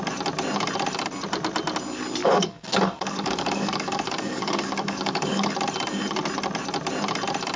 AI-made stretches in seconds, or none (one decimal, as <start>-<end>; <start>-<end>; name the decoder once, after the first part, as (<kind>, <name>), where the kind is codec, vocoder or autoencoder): 2.2-5.5 (codec, DAC)